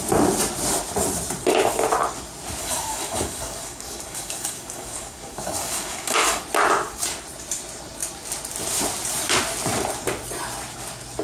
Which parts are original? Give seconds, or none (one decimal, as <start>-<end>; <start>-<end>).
0.0-2.6; 6.4-11.2